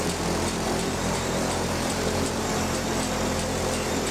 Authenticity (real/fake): fake